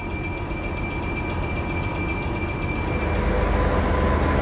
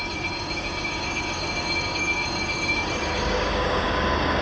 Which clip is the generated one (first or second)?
second